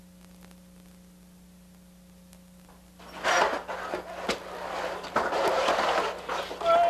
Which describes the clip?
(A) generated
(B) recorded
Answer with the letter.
B